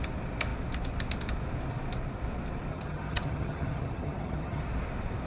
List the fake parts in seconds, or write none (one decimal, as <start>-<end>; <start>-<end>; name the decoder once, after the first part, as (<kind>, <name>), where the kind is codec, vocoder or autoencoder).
2.7-4.6 (vocoder, HiFi-GAN)